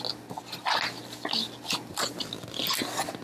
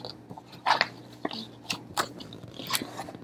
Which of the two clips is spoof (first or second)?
second